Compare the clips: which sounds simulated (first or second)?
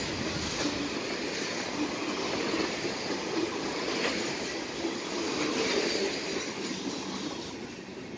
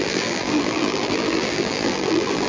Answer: second